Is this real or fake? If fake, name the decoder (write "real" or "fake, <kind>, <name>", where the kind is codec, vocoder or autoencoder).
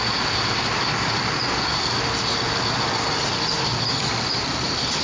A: real